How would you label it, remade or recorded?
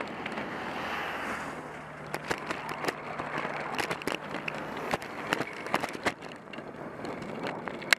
recorded